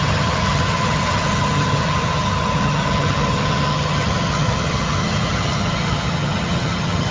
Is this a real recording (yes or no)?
no